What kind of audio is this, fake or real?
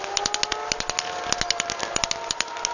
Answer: real